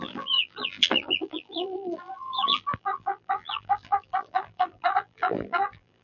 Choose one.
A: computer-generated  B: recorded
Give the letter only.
A